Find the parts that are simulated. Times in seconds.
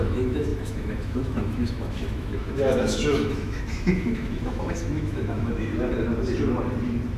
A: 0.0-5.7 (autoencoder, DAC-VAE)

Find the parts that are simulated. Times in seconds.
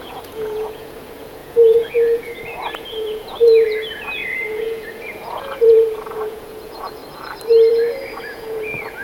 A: 0.0-7.0 (vocoder, Vocos); 7.7-9.0